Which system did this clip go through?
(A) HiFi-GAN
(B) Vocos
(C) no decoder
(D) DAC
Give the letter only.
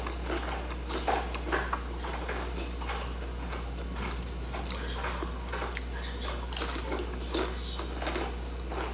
C